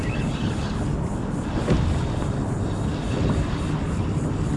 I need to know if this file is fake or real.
real